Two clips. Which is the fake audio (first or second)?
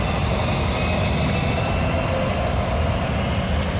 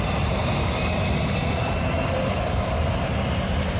second